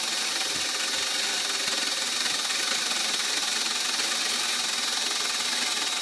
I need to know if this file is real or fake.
real